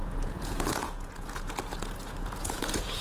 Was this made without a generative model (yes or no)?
no